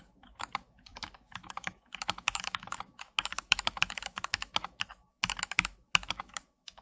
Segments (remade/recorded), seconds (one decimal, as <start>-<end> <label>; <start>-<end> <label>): 0.0-6.8 remade